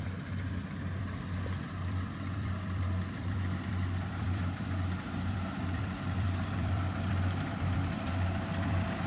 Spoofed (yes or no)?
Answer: yes